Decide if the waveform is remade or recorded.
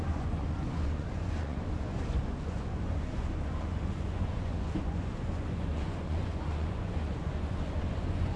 remade